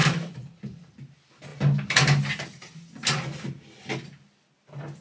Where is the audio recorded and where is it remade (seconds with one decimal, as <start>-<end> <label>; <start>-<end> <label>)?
0.0-0.9 remade; 0.9-5.0 recorded